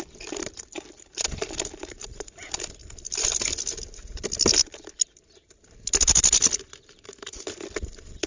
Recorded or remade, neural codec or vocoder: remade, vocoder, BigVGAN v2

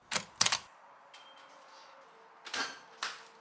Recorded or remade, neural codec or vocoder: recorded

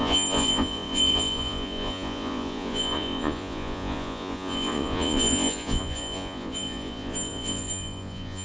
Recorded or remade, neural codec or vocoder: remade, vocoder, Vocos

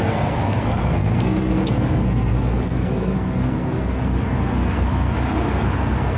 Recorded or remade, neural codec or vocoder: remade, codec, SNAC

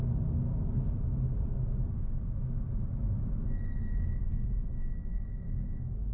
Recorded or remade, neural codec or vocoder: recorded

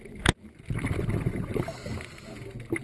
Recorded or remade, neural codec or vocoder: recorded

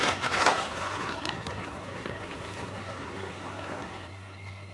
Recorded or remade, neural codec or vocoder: remade, codec, SNAC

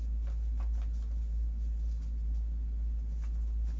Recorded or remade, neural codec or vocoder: recorded